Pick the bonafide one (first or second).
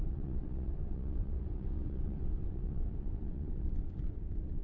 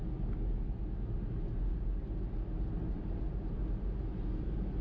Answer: second